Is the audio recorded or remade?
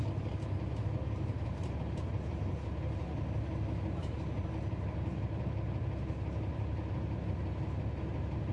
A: recorded